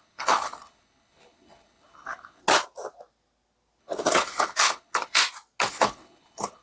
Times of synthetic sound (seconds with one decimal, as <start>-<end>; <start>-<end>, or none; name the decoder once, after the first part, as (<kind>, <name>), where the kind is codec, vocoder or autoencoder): 0.0-2.4 (codec, HILCodec); 3.8-5.2; 5.7-6.6